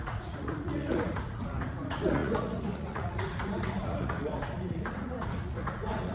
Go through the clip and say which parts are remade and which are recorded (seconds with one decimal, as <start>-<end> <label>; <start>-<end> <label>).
0.0-6.1 remade